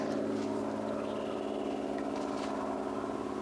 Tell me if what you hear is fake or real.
real